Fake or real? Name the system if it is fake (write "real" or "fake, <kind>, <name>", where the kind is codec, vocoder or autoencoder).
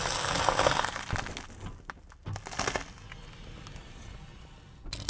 real